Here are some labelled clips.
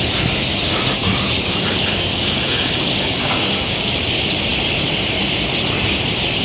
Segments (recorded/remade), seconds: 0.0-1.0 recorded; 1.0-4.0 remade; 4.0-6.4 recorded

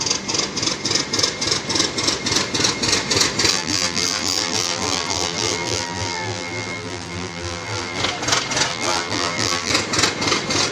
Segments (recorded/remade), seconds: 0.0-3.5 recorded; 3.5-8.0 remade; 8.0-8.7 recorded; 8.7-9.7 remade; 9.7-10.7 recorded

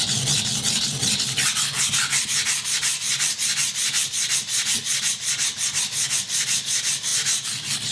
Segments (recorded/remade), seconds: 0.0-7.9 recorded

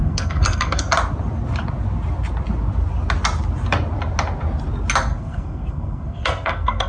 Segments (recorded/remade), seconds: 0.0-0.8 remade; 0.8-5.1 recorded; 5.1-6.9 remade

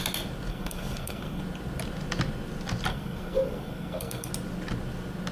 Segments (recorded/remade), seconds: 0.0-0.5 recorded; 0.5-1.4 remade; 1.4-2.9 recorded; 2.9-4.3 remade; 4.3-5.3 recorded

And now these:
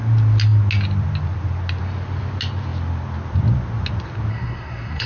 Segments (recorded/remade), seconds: 0.0-4.3 recorded; 4.3-5.1 remade